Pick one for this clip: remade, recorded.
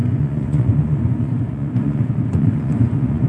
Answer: remade